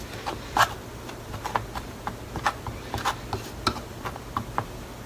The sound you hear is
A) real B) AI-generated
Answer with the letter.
A